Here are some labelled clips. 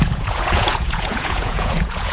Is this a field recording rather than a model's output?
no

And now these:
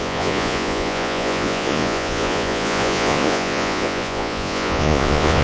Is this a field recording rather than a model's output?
no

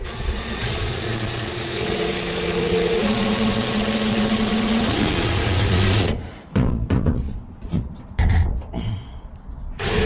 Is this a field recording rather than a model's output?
no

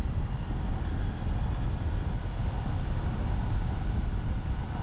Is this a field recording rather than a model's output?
yes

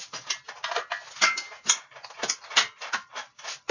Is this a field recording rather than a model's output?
yes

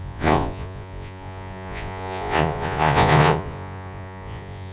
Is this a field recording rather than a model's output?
no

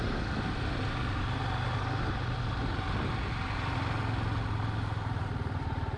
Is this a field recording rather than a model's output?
yes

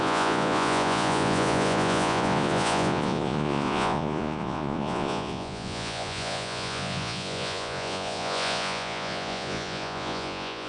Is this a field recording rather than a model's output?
no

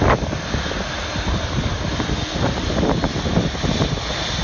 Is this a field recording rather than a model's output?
yes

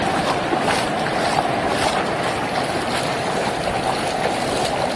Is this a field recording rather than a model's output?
yes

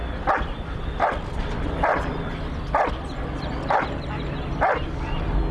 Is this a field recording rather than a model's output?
yes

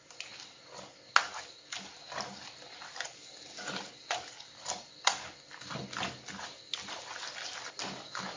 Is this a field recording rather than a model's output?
yes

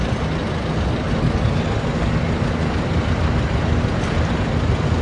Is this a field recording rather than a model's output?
yes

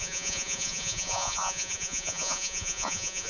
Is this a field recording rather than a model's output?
no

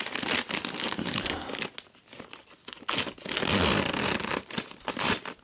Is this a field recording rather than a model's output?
yes